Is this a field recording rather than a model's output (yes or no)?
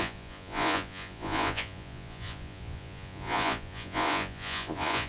no